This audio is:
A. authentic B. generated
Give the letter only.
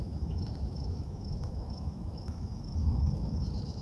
B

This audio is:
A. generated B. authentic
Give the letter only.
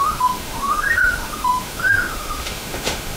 A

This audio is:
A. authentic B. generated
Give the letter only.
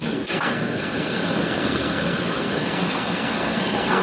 B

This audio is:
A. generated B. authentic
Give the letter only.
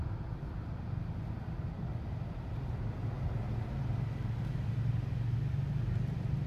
B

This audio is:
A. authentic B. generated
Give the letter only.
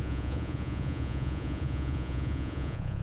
B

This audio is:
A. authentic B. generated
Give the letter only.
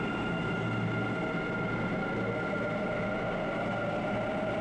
A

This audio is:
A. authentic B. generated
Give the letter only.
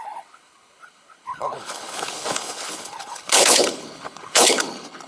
B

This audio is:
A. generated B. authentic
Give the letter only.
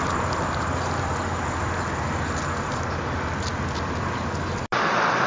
B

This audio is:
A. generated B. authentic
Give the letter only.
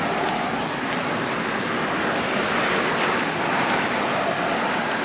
B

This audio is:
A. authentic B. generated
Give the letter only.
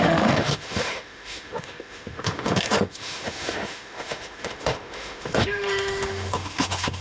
B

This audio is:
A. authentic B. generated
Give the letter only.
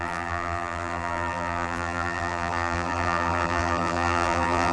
B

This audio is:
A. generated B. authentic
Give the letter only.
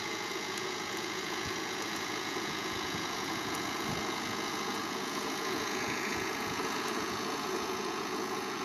A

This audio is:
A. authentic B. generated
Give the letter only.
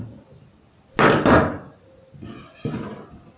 A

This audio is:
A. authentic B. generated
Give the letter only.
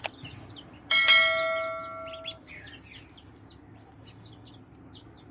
A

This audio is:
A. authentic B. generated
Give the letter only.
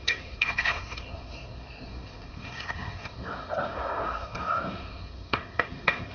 B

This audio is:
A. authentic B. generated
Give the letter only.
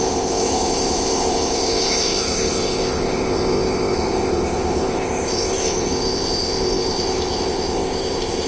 B